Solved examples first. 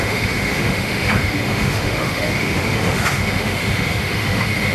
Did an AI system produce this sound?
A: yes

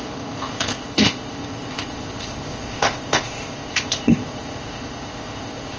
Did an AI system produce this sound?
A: yes